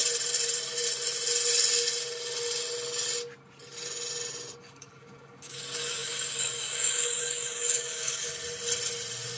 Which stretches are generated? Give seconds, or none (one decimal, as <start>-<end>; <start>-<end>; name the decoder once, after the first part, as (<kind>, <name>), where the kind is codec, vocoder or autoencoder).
4.6-8.3 (codec, DAC)